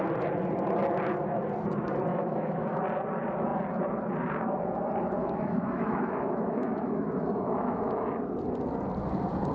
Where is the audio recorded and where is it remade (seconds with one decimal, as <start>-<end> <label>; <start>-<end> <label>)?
0.0-2.1 recorded; 2.1-2.8 remade; 2.8-5.2 recorded; 5.2-8.2 remade; 8.2-9.5 recorded

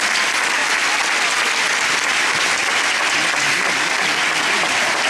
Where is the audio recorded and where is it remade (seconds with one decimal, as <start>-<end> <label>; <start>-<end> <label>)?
0.0-5.1 recorded

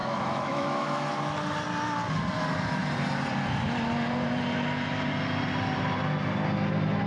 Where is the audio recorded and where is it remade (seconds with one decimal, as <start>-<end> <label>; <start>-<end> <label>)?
0.0-1.1 remade; 1.1-7.1 recorded

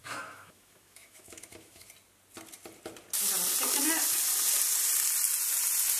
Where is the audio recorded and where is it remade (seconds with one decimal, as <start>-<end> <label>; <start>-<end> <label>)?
0.0-1.9 remade; 1.9-6.0 recorded

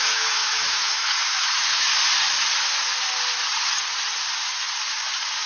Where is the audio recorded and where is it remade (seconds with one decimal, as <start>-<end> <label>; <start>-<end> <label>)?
0.0-1.9 remade; 1.9-5.5 recorded

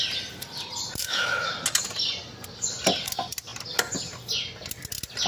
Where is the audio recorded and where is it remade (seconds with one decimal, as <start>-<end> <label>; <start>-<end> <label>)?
0.0-1.0 recorded; 1.0-1.5 remade; 1.5-5.3 recorded

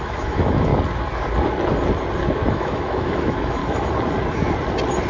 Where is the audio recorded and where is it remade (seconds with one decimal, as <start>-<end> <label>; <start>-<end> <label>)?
0.0-0.7 remade; 0.7-2.5 recorded; 2.5-3.6 remade; 3.6-5.1 recorded

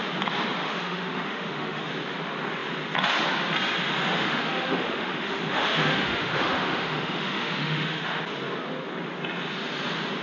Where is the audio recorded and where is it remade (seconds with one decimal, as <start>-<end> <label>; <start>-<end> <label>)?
0.0-0.6 recorded; 0.6-1.9 remade; 1.9-4.1 recorded; 4.1-8.2 remade; 8.2-10.2 recorded